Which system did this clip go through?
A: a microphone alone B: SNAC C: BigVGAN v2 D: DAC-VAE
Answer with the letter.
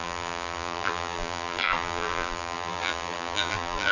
C